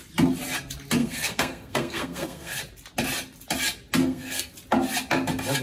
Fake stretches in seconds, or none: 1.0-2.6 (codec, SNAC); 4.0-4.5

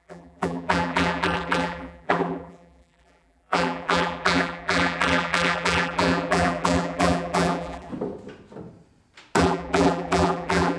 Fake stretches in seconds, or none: 0.0-7.9 (vocoder, BigVGAN v2); 9.4-10.8

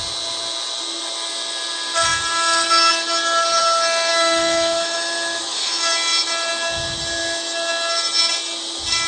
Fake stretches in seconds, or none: 4.1-5.8 (autoencoder, DAC-VAE)

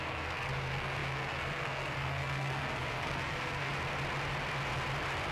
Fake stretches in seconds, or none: 0.0-3.7 (codec, SNAC)

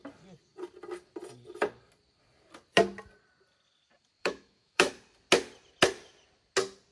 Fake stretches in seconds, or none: 4.2-4.9 (autoencoder, DAC-VAE)

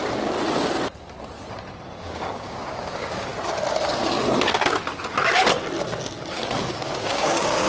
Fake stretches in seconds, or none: 2.0-3.3 (codec, DAC); 6.8-7.7

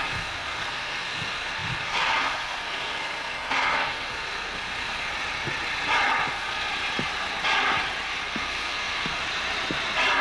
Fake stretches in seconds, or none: 0.0-5.1 (codec, SNAC); 6.3-6.7; 8.2-9.2

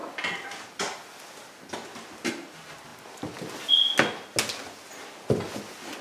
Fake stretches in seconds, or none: none